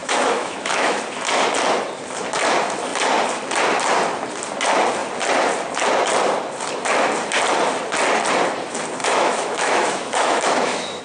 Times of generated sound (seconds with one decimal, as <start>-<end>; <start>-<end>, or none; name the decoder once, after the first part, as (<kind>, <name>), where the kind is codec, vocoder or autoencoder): 0.0-1.0 (autoencoder, DAC-VAE); 9.0-11.0